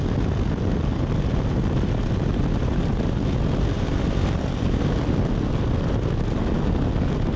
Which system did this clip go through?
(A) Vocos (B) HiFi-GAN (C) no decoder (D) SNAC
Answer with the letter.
C